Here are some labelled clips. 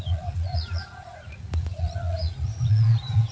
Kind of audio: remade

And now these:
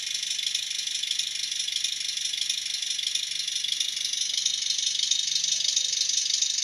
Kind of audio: recorded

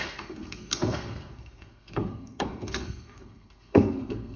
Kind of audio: remade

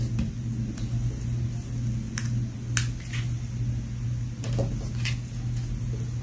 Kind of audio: recorded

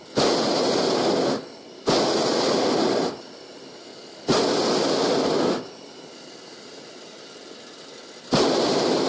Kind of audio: recorded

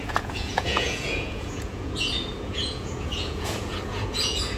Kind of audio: remade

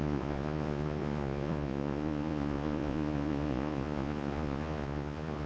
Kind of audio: remade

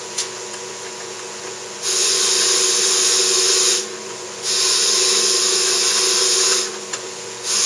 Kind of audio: remade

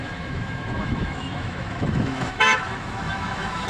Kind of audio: remade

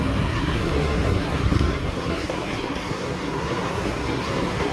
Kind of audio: remade